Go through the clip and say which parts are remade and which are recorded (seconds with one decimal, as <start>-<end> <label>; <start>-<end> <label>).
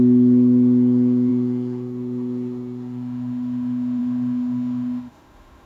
0.0-5.7 remade